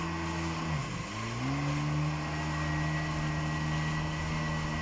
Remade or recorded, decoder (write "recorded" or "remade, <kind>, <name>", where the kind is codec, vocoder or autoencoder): recorded